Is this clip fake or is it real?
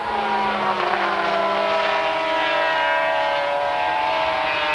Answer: real